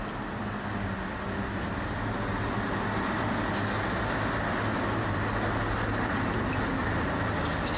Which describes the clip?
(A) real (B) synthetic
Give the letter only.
A